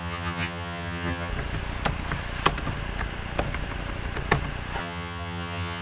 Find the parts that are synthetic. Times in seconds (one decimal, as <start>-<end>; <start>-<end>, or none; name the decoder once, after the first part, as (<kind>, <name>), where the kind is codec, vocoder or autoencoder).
0.0-1.3 (vocoder, HiFi-GAN); 4.8-5.8